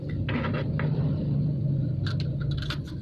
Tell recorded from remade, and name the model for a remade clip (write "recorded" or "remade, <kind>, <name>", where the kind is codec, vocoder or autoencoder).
recorded